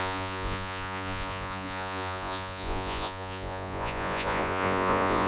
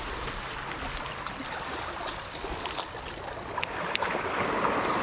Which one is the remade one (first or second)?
first